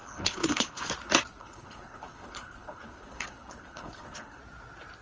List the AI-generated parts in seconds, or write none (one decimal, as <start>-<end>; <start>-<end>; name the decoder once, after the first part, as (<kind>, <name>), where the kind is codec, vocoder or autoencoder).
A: 0.0-0.9 (codec, HILCodec); 1.4-4.4